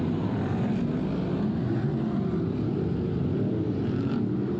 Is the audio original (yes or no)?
yes